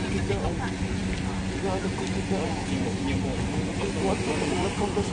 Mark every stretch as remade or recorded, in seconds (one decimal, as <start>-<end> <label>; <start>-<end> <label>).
0.0-5.1 recorded